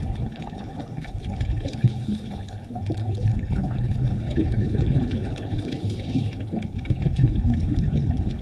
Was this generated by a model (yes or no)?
yes